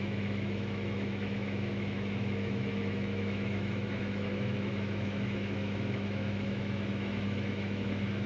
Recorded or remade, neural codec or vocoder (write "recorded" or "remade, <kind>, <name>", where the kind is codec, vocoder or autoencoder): remade, autoencoder, DAC-VAE